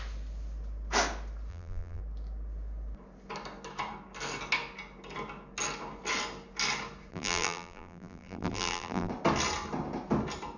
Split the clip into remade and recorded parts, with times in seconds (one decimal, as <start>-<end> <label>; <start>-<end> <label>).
0.0-1.5 recorded; 1.5-2.0 remade; 2.0-7.1 recorded; 7.1-9.1 remade; 9.1-10.6 recorded